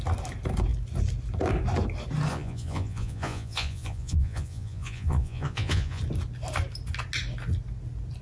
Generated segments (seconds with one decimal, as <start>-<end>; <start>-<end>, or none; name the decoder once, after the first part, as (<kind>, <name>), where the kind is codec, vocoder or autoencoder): 2.3-6.0 (vocoder, Vocos)

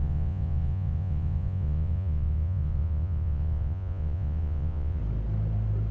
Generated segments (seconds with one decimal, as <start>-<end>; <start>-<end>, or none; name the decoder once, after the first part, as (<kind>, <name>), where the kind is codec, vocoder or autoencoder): 0.0-5.0 (vocoder, Vocos)

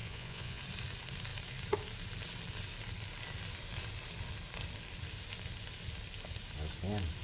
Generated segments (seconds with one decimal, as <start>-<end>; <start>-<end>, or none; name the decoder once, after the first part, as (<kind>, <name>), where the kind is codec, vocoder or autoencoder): 0.0-0.6 (vocoder, Vocos)